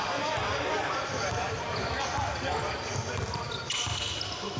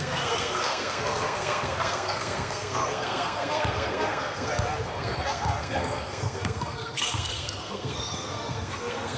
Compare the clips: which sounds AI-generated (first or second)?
second